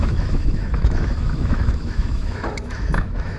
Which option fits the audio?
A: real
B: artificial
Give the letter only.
B